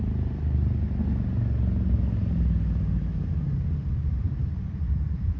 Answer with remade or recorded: recorded